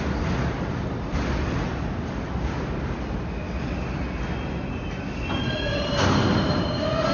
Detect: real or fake real